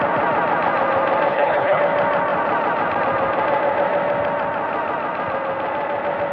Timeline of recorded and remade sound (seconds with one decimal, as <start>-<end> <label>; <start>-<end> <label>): 0.0-1.3 recorded; 1.3-1.8 remade; 1.8-6.3 recorded